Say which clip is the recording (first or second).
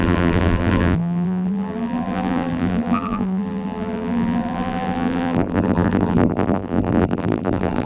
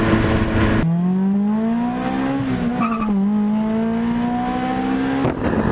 second